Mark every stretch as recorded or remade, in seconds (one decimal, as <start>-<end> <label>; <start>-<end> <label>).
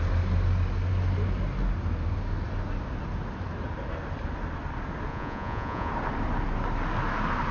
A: 0.0-5.1 recorded; 5.1-5.9 remade; 5.9-7.5 recorded